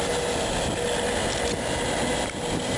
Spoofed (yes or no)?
no